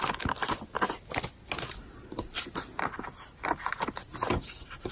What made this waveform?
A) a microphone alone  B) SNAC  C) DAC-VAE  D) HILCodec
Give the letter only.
A